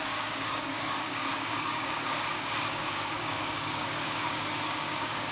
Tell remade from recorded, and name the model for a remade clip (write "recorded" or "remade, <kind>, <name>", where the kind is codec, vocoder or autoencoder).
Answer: remade, codec, DAC